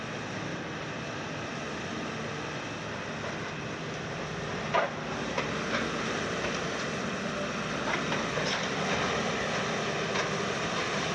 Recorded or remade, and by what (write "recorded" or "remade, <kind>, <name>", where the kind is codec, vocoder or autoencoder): recorded